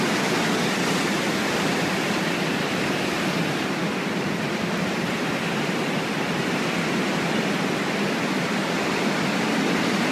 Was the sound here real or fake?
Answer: real